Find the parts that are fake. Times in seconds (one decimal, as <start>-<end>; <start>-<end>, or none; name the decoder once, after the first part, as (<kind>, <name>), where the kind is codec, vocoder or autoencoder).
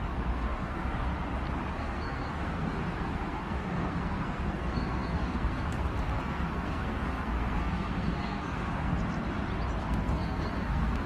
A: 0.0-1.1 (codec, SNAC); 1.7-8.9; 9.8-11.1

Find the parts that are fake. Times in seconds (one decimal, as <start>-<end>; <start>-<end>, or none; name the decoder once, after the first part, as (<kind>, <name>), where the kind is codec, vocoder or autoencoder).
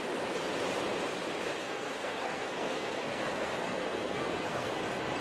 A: 1.6-4.7 (codec, SNAC)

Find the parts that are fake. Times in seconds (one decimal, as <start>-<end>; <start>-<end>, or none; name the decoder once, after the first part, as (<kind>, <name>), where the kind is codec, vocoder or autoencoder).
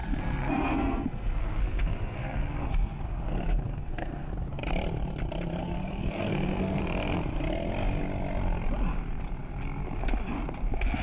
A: 0.0-4.3 (codec, SNAC); 5.6-6.8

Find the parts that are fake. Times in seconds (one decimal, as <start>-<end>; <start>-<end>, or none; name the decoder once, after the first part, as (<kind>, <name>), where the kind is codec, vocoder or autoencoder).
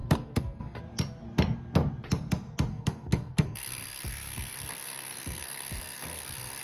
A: 0.0-0.8 (codec, SNAC); 2.7-6.6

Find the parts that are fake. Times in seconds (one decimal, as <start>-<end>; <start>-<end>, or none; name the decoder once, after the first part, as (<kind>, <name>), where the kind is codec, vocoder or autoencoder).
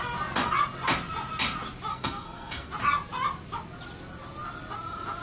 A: 1.9-2.7 (codec, SNAC)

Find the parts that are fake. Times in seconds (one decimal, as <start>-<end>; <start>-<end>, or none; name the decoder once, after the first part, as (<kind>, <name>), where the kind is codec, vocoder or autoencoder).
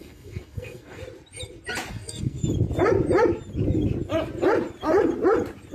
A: 0.0-1.0 (codec, SNAC); 1.9-2.4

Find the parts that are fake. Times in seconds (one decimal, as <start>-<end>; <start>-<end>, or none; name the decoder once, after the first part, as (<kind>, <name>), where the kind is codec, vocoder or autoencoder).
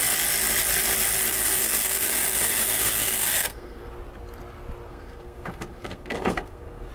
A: 1.3-3.8 (codec, SNAC); 4.9-6.9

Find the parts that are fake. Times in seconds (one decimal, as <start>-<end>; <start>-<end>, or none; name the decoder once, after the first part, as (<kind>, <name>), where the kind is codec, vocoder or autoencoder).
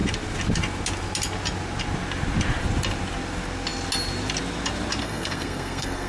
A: 5.0-6.1 (codec, SNAC)